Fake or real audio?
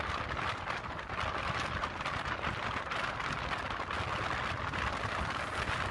real